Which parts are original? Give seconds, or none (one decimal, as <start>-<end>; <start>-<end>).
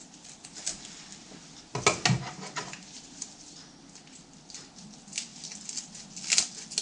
0.5-5.3; 5.8-6.8